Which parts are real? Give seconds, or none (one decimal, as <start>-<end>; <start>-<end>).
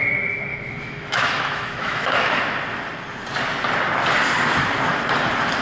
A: 0.0-0.5; 2.3-5.6